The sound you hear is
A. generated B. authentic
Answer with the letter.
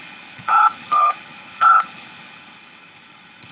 A